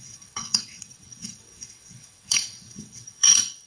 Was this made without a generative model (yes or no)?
no